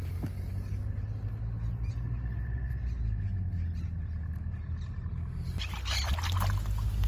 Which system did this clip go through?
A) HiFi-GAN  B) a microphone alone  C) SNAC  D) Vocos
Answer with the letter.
B